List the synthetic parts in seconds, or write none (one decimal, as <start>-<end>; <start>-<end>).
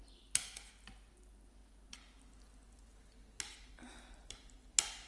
none